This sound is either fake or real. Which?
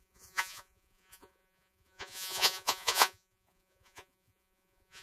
fake